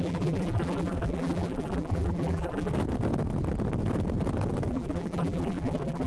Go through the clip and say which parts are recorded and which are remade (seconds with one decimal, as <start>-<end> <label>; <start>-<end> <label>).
0.0-2.7 remade; 2.7-4.7 recorded; 4.7-6.1 remade

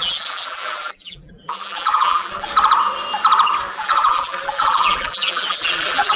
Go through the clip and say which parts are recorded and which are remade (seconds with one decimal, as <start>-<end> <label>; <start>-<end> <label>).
0.0-2.5 remade; 2.5-3.7 recorded; 3.7-6.2 remade

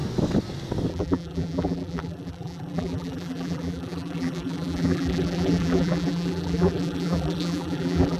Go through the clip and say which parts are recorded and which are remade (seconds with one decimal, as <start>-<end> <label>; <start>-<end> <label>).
0.0-0.9 recorded; 0.9-8.2 remade

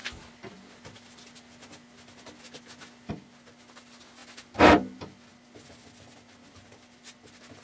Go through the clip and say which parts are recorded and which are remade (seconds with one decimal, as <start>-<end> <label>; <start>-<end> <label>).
0.0-7.6 recorded